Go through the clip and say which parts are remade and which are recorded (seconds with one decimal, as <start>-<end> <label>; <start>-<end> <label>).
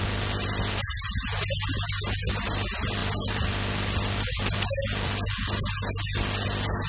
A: 0.0-6.9 recorded